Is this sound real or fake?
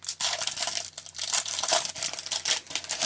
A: fake